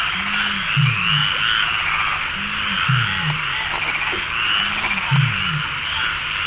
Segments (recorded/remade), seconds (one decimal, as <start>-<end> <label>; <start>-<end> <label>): 0.0-6.5 recorded